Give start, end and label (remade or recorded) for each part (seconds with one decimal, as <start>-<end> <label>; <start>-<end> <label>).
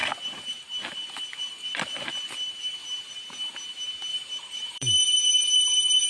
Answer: 0.0-4.1 recorded; 4.1-6.1 remade